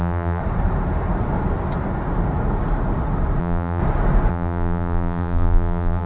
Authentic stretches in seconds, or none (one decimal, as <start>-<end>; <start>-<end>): 0.4-3.4; 3.8-4.3